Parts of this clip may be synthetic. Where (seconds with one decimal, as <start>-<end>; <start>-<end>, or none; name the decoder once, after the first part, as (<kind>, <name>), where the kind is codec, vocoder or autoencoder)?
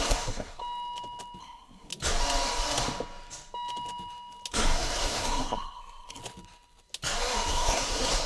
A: 0.0-0.6 (codec, SNAC); 1.4-1.9; 4.5-6.2; 7.5-8.3